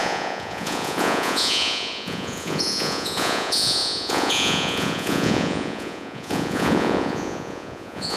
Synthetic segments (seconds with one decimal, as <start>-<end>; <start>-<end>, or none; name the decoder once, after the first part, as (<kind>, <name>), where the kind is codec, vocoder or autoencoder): 0.0-8.2 (vocoder, Vocos)